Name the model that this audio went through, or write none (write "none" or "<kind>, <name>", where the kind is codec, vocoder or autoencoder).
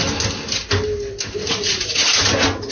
none